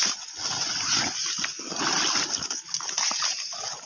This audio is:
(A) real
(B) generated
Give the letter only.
A